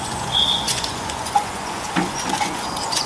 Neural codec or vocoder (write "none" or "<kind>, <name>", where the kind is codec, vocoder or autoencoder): vocoder, Vocos